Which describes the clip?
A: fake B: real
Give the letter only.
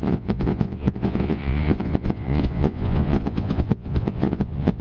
A